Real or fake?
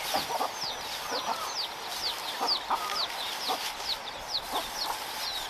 real